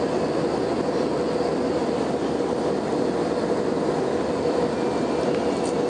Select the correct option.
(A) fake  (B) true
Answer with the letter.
B